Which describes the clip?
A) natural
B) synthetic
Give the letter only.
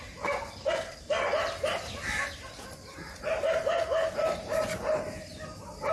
A